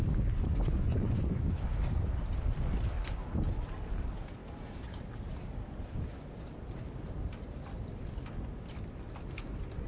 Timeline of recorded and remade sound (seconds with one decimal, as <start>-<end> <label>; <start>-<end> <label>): 0.0-0.5 recorded; 0.5-1.4 remade; 1.4-9.9 recorded

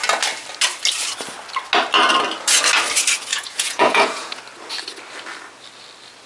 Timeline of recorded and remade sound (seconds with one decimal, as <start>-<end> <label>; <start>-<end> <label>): 0.0-3.3 recorded; 3.3-4.4 remade; 4.4-6.3 recorded

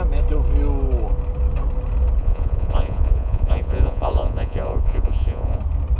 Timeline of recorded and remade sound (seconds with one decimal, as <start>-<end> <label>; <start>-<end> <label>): 0.0-2.2 recorded; 2.2-5.6 remade; 5.6-6.0 recorded